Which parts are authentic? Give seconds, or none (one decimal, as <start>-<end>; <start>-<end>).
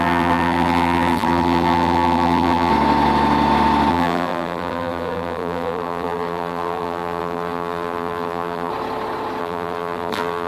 2.7-3.9; 8.7-9.4